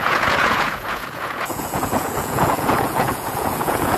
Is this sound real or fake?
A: fake